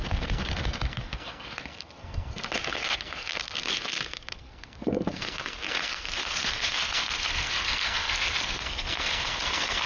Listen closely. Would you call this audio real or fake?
fake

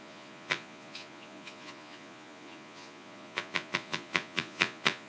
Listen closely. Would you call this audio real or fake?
fake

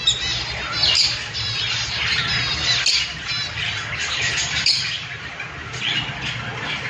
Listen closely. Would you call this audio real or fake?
real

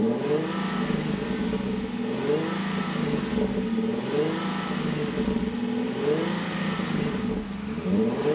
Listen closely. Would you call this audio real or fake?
real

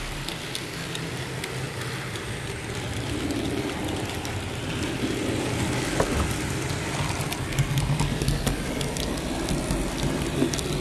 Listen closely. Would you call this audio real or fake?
real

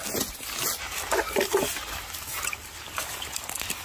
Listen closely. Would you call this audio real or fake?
real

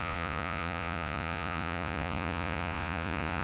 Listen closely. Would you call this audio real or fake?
fake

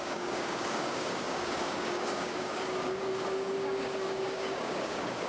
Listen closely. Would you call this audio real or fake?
fake